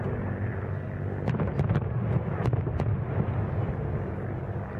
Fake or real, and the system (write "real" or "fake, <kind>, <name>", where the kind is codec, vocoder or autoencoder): real